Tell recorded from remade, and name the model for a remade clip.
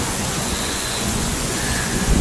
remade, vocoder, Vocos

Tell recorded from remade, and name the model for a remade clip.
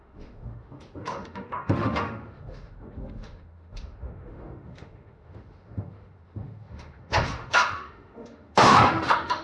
remade, autoencoder, DAC-VAE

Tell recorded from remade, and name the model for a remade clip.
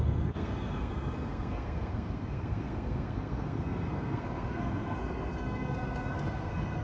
remade, codec, SNAC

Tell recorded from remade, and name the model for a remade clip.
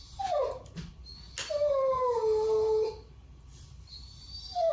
recorded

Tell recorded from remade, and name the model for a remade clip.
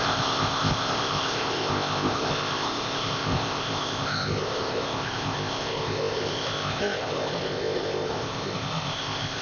remade, codec, ZipCodec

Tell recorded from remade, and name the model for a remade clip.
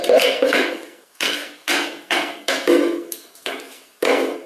remade, codec, SNAC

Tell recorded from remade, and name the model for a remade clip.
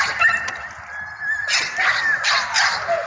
recorded